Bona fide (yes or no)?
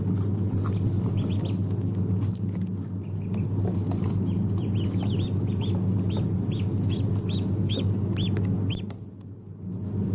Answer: yes